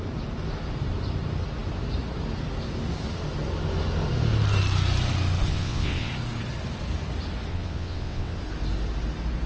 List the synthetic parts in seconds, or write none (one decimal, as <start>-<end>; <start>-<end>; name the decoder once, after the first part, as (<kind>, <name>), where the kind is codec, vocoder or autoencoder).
5.5-6.1 (vocoder, WaveNeXt); 7.5-8.4